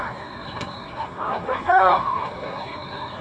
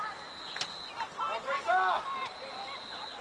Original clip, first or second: second